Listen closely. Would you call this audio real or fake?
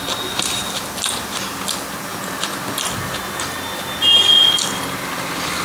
real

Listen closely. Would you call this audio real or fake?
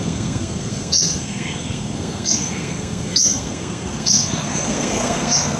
fake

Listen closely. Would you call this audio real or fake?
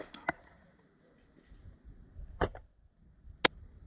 real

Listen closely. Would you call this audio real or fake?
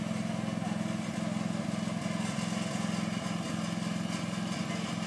real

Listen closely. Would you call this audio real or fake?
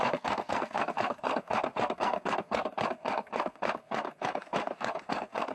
fake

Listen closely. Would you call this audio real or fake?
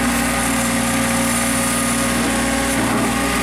real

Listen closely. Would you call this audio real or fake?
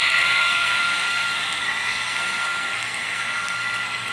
fake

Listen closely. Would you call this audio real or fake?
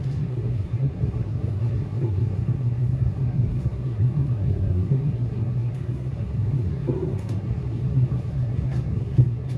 fake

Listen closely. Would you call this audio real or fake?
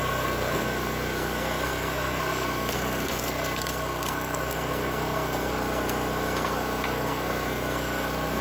fake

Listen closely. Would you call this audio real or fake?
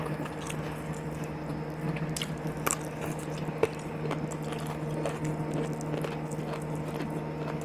real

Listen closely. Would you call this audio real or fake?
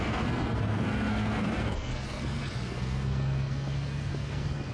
fake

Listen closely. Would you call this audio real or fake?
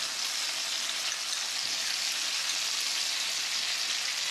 real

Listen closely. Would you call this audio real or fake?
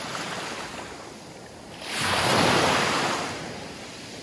real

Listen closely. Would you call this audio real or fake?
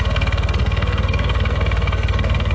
fake